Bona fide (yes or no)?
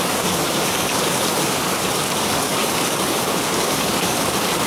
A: no